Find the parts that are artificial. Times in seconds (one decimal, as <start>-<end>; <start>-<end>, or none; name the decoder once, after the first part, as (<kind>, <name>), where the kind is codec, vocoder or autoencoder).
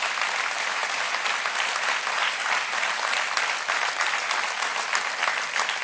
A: 0.8-4.3 (vocoder, BigVGAN v2); 4.7-5.8